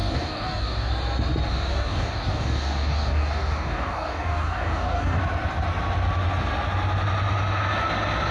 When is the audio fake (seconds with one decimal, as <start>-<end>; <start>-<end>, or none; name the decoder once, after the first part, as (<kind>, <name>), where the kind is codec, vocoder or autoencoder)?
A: 0.0-0.9 (codec, DAC); 1.5-5.2